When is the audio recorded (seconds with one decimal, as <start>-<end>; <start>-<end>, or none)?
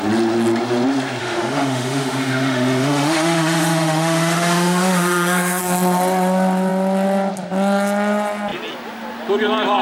0.0-1.2; 5.6-9.8